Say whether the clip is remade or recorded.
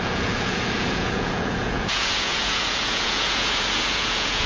remade